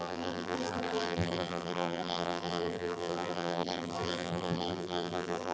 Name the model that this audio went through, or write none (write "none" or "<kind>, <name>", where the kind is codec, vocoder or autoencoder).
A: vocoder, BigVGAN v2